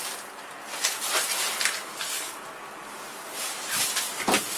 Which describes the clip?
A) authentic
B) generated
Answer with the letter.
A